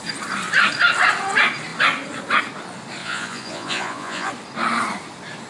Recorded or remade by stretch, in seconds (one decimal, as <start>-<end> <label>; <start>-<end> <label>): 0.0-3.0 recorded; 3.0-4.3 remade; 4.3-5.5 recorded